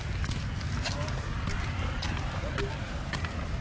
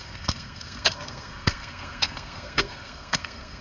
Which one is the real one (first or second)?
first